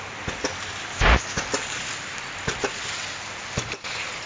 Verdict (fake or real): real